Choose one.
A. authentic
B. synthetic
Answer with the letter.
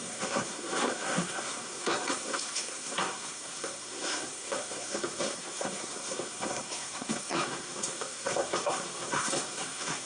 B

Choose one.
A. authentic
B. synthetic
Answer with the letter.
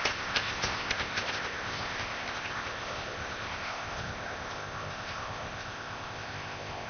B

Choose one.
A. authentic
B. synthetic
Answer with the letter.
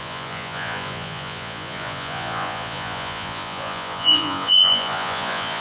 B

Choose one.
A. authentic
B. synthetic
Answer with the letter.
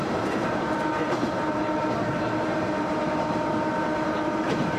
B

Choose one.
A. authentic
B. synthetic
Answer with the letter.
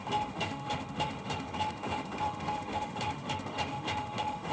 B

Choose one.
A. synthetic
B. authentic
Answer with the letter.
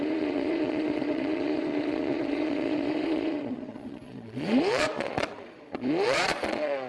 A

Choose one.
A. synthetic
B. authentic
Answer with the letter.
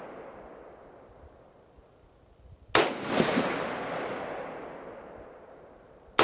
B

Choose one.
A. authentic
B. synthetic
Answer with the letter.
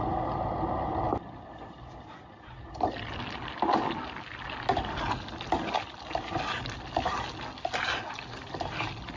A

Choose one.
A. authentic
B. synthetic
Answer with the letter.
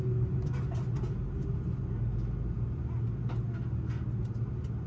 A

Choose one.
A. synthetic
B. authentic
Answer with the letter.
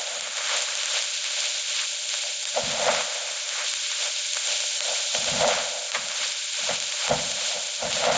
B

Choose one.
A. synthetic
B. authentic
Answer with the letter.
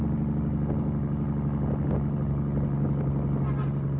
B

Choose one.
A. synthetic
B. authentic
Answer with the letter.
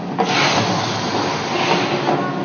B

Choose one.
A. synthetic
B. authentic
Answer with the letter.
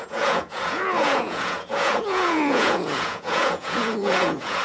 A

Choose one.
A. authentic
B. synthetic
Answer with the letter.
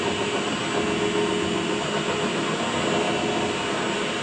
A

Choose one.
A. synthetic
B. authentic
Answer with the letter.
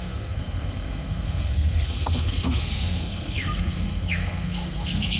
A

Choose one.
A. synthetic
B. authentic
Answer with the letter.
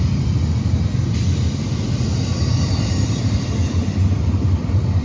B